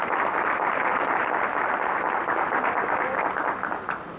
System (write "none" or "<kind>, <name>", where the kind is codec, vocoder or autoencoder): none